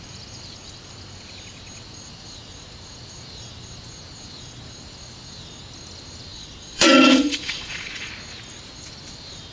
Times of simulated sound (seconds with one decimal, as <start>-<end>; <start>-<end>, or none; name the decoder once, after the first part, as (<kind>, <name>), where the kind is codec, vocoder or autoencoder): 6.3-8.1 (vocoder, Vocos)